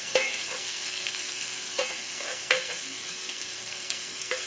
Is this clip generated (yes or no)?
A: yes